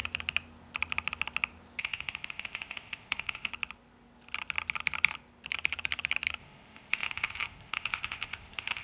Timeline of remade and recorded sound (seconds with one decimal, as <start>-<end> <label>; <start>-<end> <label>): 0.0-1.8 recorded; 1.8-3.5 remade; 3.5-6.4 recorded; 6.4-8.8 remade